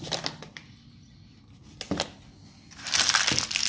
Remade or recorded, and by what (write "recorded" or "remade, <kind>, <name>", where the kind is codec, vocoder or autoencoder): recorded